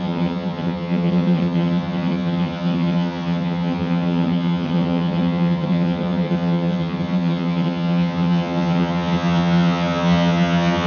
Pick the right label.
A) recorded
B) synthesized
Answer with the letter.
B